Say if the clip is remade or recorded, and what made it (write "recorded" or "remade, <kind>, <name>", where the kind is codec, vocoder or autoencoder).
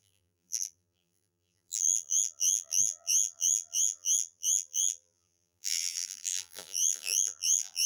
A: remade, vocoder, BigVGAN v2